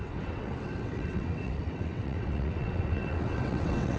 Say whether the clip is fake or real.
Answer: fake